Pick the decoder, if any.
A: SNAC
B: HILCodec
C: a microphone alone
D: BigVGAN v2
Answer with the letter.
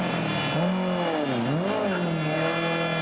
C